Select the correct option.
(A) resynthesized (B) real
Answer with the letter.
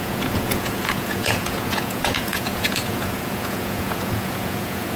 A